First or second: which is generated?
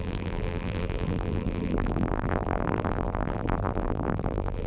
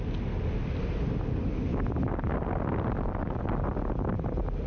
first